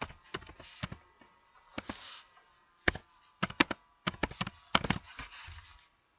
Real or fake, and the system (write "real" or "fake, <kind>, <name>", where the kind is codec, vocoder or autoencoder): real